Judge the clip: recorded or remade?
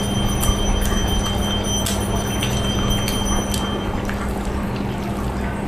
recorded